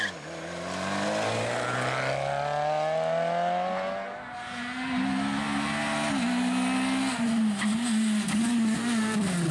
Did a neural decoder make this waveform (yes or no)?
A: no